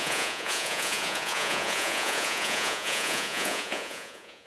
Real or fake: fake